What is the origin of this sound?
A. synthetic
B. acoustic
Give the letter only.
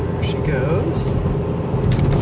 B